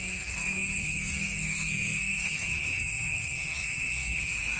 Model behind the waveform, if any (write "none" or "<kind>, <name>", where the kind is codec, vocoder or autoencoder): codec, SNAC